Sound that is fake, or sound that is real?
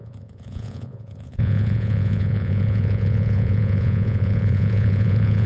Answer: fake